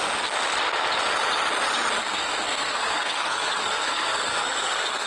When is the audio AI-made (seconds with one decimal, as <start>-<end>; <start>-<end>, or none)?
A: 2.0-5.1